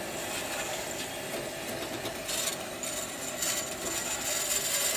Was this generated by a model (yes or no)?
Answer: no